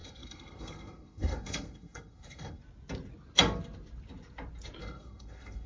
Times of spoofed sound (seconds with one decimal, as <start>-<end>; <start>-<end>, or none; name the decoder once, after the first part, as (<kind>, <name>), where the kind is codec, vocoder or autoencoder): 0.0-2.6 (codec, SNAC); 4.8-5.7